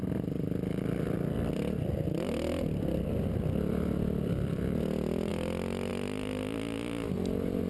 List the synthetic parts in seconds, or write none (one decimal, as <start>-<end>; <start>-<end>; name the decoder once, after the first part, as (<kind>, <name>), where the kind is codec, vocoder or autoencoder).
none